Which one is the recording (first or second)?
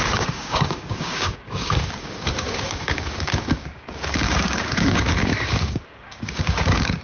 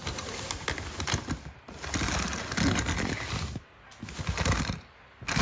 second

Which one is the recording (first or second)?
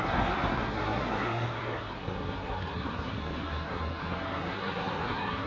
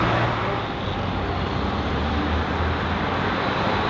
second